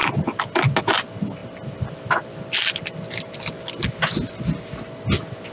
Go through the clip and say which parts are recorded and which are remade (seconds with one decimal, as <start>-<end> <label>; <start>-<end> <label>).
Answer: 0.0-5.5 recorded